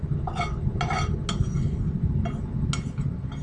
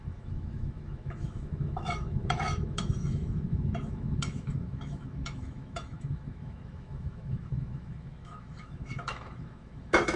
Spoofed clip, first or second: second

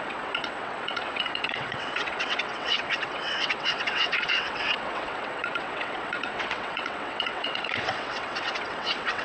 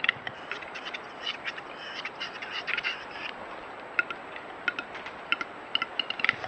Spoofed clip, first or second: first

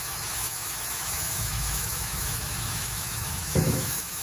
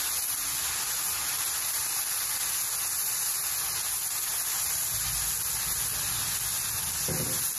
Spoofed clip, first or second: first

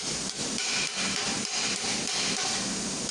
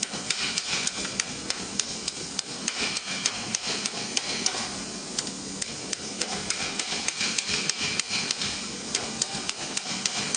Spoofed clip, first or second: second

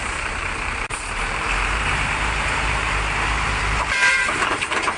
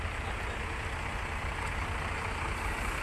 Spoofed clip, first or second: first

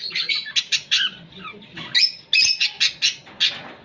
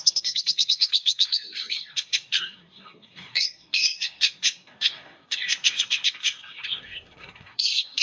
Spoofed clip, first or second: second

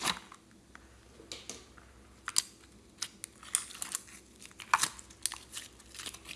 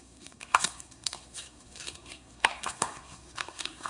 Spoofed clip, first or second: second